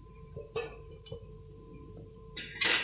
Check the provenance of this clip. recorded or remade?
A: remade